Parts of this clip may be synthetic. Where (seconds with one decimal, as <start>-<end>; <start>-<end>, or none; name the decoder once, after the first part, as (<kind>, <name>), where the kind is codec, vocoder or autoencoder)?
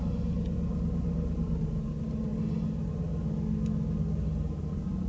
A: none